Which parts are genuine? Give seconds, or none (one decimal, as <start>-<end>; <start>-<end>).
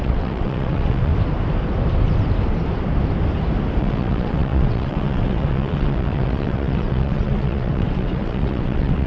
1.1-3.8